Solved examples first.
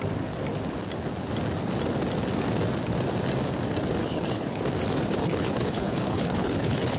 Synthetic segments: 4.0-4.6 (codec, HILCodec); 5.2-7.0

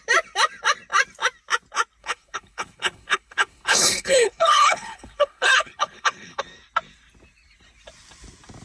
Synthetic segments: 2.0-6.4 (codec, HILCodec)

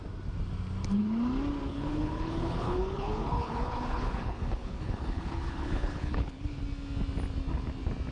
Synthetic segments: 1.7-6.6 (codec, HILCodec)

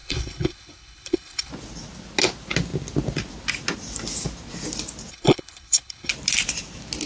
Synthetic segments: 0.0-1.5 (codec, HILCodec); 5.1-6.1